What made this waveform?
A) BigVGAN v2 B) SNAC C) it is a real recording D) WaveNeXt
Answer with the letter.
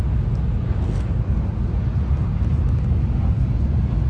C